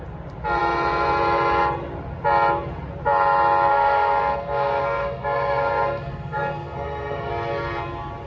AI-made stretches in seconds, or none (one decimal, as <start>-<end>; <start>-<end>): 3.7-7.3